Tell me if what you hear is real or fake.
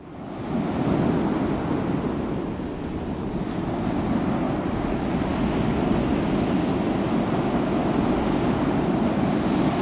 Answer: real